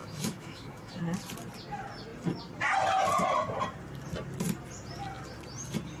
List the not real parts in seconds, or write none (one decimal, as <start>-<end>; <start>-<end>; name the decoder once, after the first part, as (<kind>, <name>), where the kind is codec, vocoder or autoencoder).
0.0-1.0 (autoencoder, DAC-VAE)